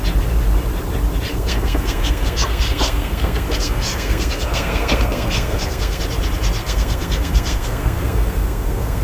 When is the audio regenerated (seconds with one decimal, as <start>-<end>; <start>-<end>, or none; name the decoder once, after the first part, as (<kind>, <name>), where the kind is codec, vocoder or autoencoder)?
1.3-6.0 (codec, SNAC); 6.6-9.0